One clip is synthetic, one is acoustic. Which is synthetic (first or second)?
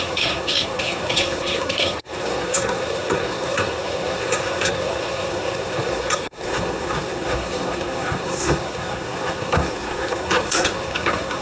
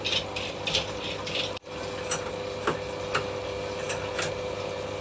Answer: first